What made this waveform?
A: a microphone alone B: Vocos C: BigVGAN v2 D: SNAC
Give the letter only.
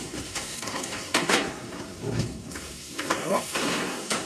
D